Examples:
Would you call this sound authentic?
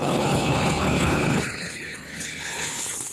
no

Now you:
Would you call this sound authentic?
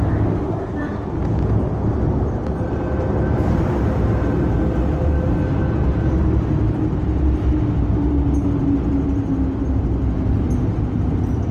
yes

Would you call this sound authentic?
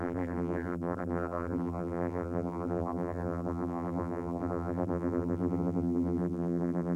no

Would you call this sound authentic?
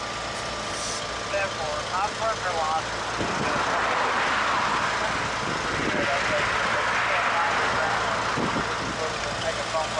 yes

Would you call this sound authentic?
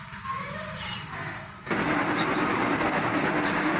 yes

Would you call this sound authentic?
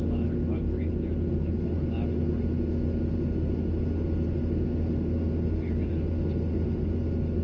yes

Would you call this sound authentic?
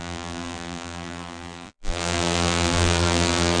no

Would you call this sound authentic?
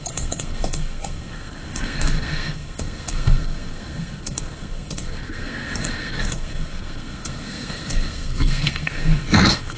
no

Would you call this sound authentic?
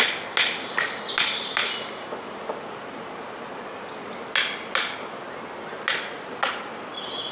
yes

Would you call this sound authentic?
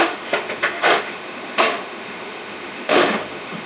no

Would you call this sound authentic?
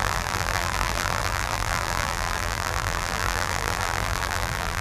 no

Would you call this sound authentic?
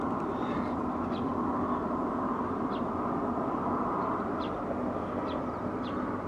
yes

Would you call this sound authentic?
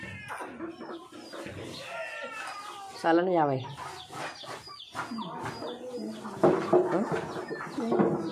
yes